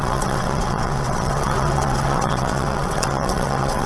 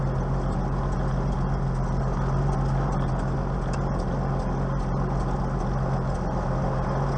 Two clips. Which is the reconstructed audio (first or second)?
first